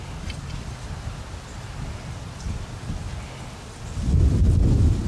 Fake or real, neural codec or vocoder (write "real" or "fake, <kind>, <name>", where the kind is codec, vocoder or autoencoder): real